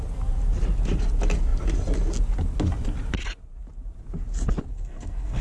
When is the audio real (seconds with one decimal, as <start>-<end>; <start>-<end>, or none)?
0.0-4.7